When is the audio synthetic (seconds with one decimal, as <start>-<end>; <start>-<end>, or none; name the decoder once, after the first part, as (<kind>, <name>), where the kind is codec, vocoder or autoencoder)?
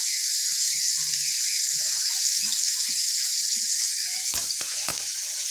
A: 0.0-0.9 (autoencoder, DAC-VAE); 1.4-5.5